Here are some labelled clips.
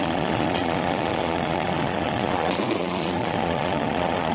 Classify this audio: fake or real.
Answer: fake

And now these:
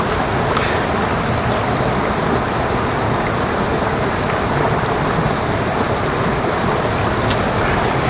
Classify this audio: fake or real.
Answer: real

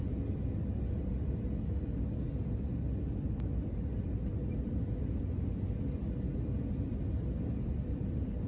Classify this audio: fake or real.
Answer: real